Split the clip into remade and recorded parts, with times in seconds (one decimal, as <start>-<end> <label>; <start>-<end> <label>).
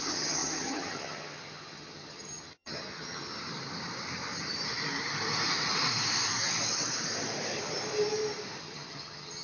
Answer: 0.0-3.3 remade; 3.3-8.6 recorded; 8.6-9.4 remade